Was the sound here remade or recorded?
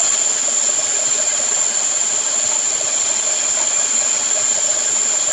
recorded